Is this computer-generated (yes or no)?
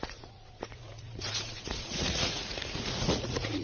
yes